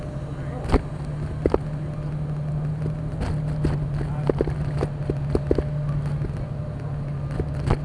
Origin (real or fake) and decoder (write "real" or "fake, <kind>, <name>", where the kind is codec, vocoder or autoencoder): real